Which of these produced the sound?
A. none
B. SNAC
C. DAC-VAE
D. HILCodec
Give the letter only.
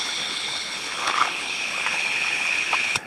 D